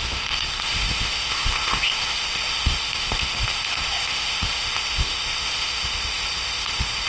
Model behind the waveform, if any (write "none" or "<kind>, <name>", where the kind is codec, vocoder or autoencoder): codec, ZipCodec